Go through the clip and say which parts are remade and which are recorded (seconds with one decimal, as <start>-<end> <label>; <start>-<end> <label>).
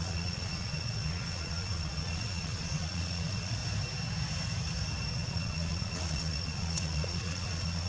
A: 0.0-3.6 remade; 3.6-5.1 recorded; 5.1-7.9 remade